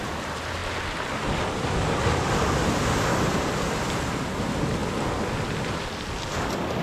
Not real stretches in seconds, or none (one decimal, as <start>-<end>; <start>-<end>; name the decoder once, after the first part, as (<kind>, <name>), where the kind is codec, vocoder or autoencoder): none